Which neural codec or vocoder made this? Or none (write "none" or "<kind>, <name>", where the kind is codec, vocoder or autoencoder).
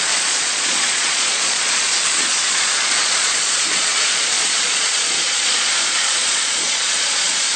vocoder, Vocos